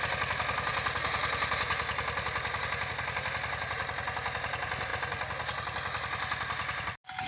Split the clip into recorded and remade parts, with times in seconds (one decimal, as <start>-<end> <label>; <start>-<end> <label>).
0.0-7.3 recorded